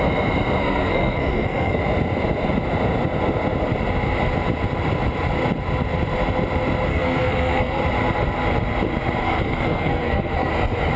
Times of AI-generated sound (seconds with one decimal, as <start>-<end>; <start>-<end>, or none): 0.6-1.8; 6.9-7.8; 9.2-10.5

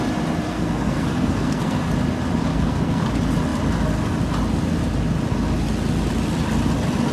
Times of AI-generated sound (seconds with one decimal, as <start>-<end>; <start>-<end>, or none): 0.5-1.9; 2.5-3.1

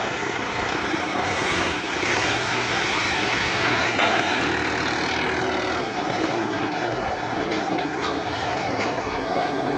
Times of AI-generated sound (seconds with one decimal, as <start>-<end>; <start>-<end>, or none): 0.0-4.4; 5.8-9.8

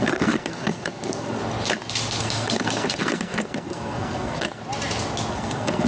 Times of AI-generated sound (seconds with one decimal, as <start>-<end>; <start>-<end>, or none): 0.0-1.4; 2.2-4.6; 5.3-5.9